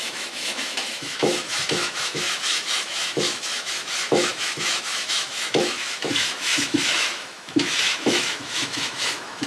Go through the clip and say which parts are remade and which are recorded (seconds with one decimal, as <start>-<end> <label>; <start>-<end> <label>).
0.0-9.5 remade